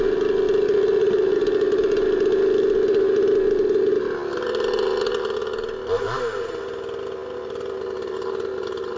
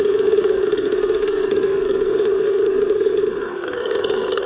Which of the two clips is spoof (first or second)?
second